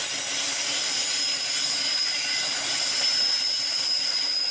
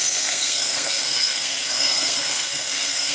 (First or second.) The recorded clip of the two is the first